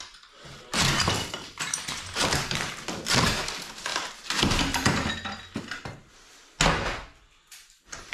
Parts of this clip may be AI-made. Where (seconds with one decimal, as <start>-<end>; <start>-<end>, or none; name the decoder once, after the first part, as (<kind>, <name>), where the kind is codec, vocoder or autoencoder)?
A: 0.8-2.7 (vocoder, BigVGAN v2); 3.9-4.6